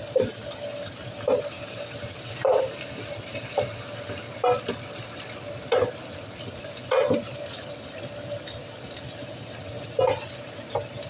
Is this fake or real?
real